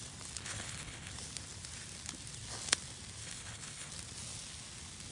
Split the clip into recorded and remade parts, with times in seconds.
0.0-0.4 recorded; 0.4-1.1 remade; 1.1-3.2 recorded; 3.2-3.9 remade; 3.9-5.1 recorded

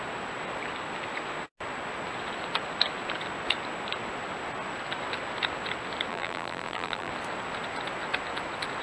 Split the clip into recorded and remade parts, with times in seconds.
0.0-6.1 recorded; 6.1-7.1 remade; 7.1-8.8 recorded

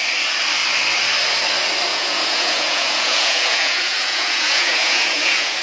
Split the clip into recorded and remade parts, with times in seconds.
0.0-1.9 recorded; 1.9-5.6 remade

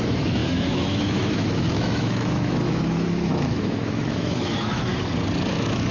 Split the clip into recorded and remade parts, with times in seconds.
0.0-4.9 remade; 4.9-5.5 recorded; 5.5-5.9 remade

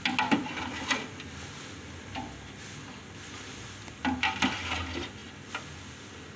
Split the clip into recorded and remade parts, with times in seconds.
0.0-6.4 recorded

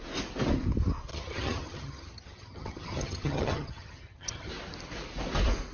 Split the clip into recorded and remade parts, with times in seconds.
0.0-1.1 recorded; 1.1-4.5 remade; 4.5-5.7 recorded

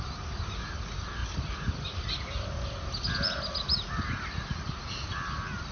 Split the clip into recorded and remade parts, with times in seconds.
0.0-5.7 recorded